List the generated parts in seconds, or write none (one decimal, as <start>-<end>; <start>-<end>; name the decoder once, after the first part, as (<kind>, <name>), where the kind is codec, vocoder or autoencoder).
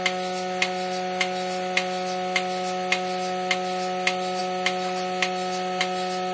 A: none